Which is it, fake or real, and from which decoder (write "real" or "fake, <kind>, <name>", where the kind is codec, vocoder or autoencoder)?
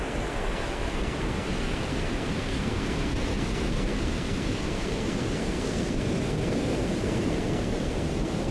fake, codec, SNAC